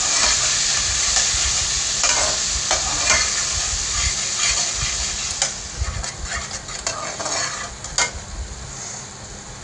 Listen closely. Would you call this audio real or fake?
real